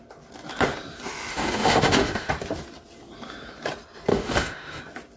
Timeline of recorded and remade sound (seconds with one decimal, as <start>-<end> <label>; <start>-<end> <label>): 0.0-1.3 recorded; 1.3-2.3 remade; 2.3-4.1 recorded; 4.1-4.8 remade; 4.8-5.2 recorded